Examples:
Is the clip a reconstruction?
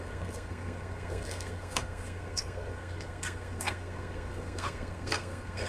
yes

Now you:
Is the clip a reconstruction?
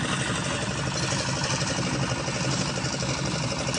no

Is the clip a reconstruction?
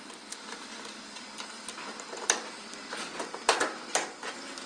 no